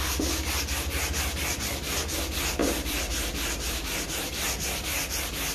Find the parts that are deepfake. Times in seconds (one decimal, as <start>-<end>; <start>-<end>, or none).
2.6-5.1